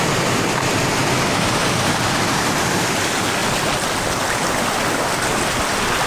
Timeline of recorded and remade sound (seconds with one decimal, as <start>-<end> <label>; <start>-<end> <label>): 0.0-6.1 recorded